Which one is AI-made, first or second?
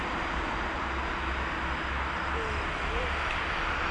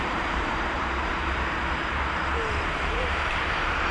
second